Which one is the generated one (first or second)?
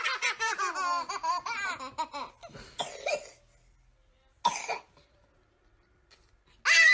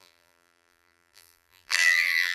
second